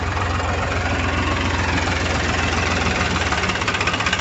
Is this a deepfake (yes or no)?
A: yes